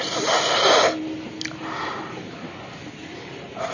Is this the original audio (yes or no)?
yes